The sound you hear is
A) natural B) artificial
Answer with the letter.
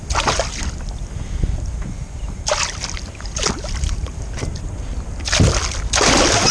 A